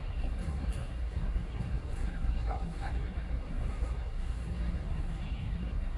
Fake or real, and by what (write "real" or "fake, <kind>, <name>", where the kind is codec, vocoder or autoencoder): fake, codec, SNAC